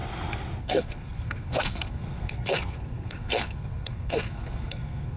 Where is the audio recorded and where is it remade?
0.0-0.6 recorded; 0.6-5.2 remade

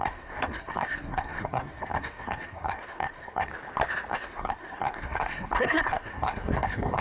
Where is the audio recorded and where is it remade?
0.0-3.5 remade; 3.5-4.1 recorded; 4.1-7.0 remade

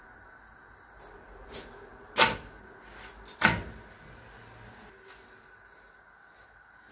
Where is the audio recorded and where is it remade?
0.0-6.9 recorded

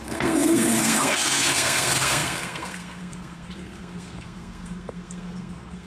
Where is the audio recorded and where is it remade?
0.0-5.9 remade

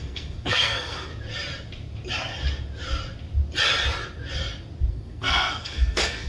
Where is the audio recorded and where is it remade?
0.0-1.1 remade; 1.1-4.9 recorded; 4.9-6.3 remade

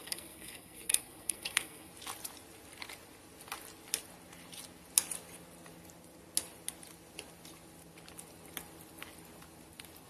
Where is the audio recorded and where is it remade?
0.0-1.9 remade; 1.9-10.1 recorded